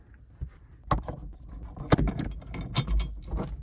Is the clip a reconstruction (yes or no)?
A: no